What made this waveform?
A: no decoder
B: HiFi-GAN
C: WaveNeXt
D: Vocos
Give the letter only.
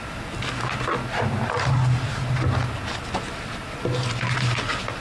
A